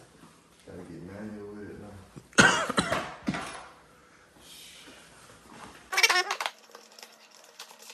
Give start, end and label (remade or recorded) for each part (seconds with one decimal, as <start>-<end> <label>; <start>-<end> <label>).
0.0-1.3 remade; 1.3-2.2 recorded; 2.2-7.9 remade